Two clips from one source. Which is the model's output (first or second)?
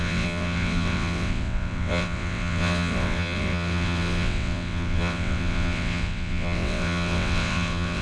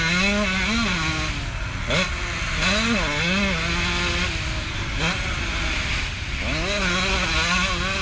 first